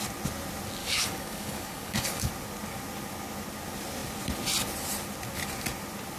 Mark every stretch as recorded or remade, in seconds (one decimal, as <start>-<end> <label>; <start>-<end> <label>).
0.0-0.8 recorded; 0.8-2.3 remade; 2.3-6.2 recorded